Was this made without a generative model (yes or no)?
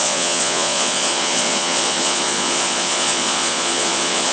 no